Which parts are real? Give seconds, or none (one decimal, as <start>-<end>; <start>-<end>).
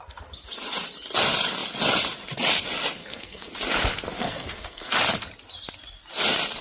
0.0-3.0; 3.5-4.2; 4.9-6.6